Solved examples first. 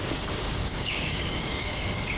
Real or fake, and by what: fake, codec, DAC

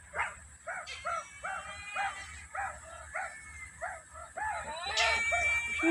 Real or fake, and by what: real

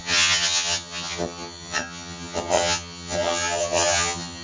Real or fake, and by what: fake, vocoder, HiFi-GAN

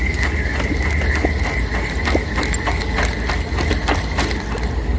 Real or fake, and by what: real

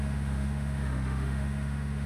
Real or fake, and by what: fake, autoencoder, DAC-VAE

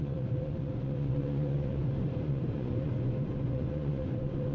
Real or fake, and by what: fake, vocoder, Vocos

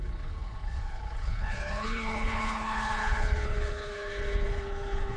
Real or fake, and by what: fake, codec, HILCodec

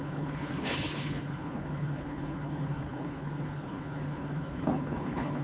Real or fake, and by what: fake, codec, HILCodec